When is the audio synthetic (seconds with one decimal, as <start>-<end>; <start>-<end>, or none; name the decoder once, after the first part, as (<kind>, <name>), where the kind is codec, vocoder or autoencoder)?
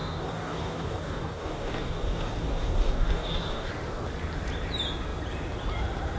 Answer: 0.0-3.7 (codec, DAC)